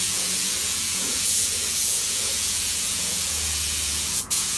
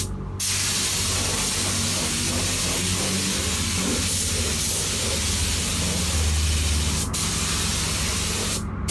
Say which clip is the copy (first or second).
first